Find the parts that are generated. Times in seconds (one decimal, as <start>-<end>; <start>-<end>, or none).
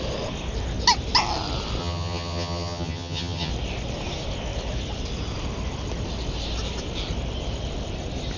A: 1.8-3.5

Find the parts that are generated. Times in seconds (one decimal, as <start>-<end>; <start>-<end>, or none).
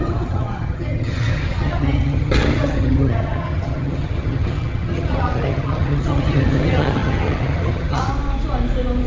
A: 0.0-8.1